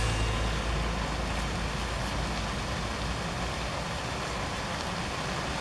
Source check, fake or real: real